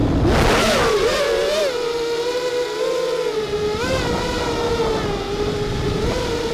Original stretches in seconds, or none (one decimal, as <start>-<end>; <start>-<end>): 0.0-6.5